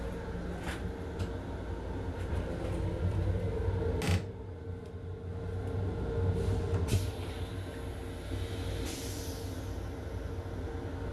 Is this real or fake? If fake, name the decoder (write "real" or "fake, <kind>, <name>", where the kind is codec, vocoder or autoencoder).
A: real